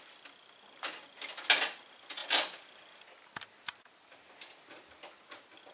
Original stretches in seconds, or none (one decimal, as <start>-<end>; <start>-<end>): 0.0-5.7